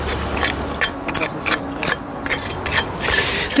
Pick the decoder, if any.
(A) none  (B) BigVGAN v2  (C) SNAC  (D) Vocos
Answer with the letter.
A